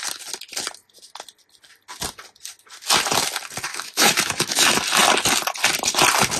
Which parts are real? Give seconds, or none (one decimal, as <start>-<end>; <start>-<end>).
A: 0.0-3.7; 4.7-6.4